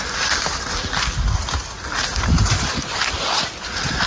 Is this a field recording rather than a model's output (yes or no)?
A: yes